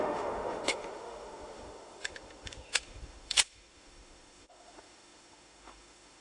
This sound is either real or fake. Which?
fake